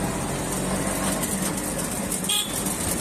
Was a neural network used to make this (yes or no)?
no